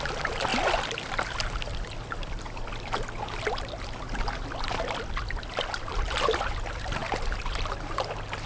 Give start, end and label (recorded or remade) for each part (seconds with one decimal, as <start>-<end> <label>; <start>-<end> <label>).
0.0-5.9 recorded; 5.9-6.5 remade; 6.5-8.5 recorded